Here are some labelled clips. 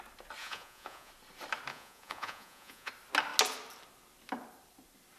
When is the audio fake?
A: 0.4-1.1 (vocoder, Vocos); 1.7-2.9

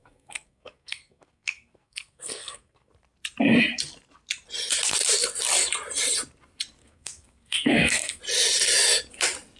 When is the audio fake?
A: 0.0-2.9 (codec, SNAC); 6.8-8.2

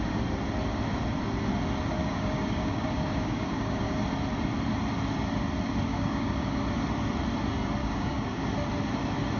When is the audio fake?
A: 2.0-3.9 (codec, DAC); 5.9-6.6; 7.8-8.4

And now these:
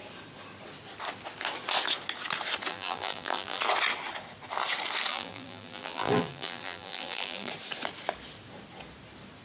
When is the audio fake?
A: 2.7-3.6 (vocoder, BigVGAN v2); 5.1-7.5